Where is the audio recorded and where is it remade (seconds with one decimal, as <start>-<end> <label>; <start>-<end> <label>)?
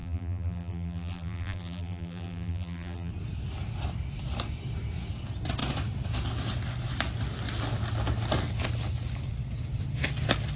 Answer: 0.0-3.1 remade; 3.1-10.6 recorded